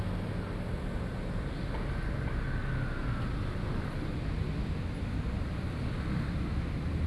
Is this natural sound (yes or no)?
yes